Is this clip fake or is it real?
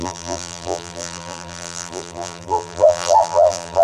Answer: fake